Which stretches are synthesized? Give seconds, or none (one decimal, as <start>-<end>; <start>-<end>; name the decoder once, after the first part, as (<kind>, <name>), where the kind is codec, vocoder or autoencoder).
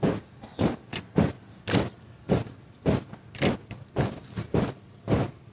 none